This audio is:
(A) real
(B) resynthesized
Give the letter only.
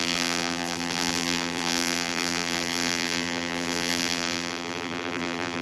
B